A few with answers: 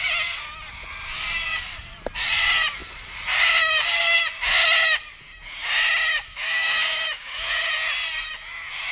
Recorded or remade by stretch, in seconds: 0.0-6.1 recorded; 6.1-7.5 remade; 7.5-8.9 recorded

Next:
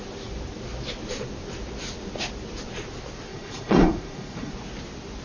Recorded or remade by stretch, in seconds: 0.0-3.3 recorded; 3.3-4.5 remade; 4.5-5.2 recorded

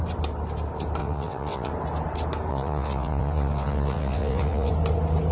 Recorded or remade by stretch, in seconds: 0.0-1.0 recorded; 1.0-1.7 remade; 1.7-2.5 recorded; 2.5-4.7 remade; 4.7-5.3 recorded